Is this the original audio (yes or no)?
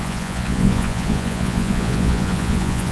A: no